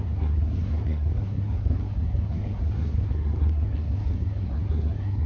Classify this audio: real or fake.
fake